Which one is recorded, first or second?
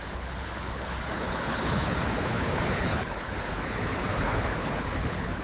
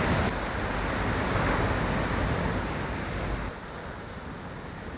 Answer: second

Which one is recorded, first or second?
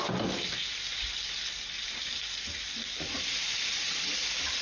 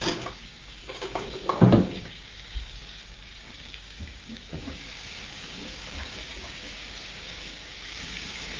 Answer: first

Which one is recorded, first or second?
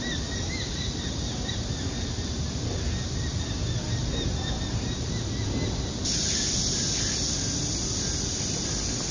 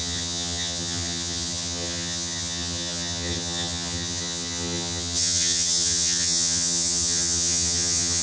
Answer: first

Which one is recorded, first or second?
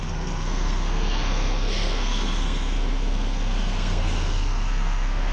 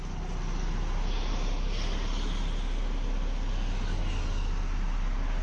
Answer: second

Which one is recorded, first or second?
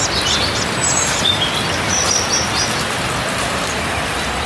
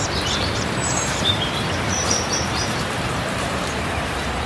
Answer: first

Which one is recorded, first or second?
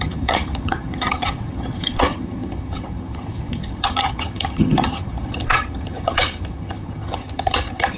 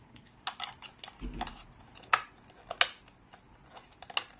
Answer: second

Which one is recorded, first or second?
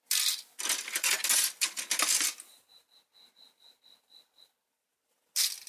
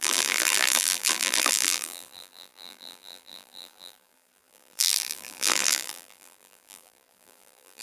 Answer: first